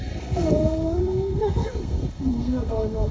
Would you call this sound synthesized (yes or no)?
yes